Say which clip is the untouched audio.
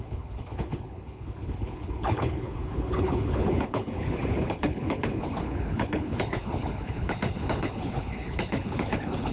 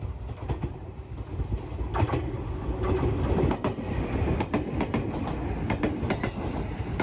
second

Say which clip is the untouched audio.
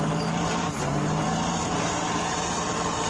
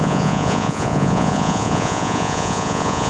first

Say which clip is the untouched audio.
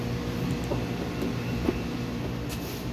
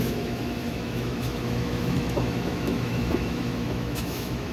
first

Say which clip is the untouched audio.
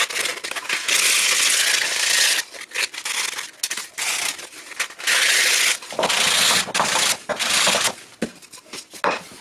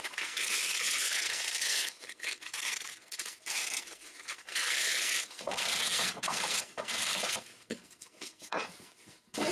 first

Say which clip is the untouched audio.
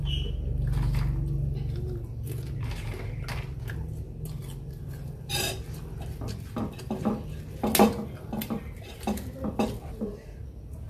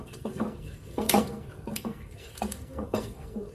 first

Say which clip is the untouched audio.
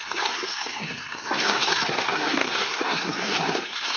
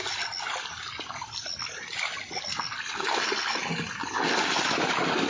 second